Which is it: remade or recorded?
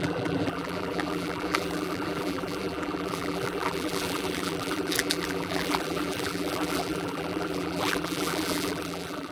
remade